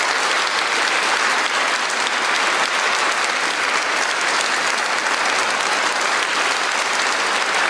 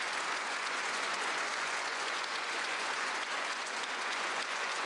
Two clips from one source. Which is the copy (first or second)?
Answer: second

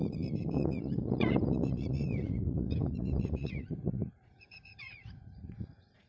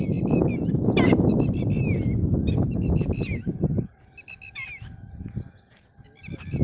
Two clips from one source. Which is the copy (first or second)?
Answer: first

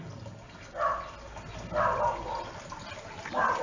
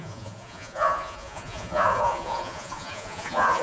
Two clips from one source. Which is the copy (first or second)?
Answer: second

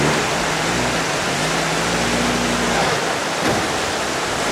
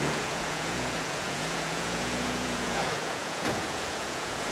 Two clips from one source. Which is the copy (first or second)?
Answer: second